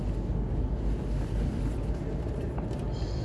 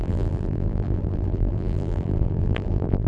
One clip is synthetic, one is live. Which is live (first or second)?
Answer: first